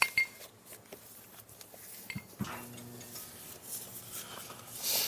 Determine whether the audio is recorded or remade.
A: recorded